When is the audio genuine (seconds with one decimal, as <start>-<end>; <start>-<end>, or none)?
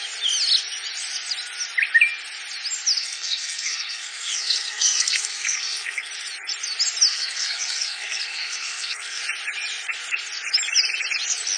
0.0-3.0; 6.1-7.1; 9.2-11.6